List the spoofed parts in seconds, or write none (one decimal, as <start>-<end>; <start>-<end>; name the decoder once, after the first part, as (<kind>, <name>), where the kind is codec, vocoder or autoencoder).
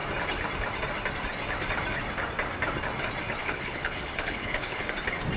3.4-4.9 (codec, HILCodec)